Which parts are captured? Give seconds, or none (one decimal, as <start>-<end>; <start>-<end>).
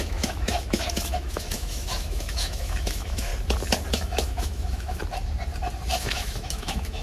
3.3-3.9; 5.0-6.0